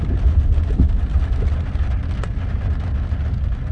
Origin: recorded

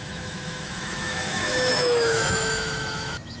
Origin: remade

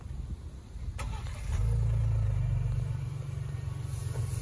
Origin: recorded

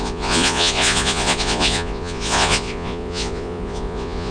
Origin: remade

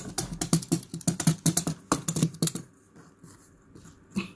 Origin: recorded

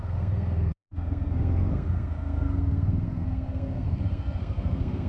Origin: remade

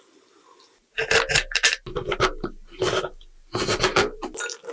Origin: recorded